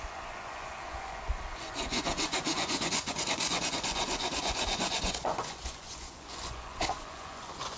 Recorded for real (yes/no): no